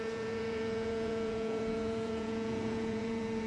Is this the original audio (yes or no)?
no